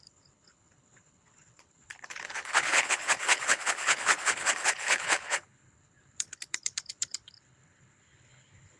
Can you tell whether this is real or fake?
fake